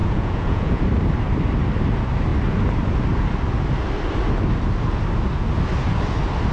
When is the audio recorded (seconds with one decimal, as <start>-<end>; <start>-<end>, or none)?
0.8-6.5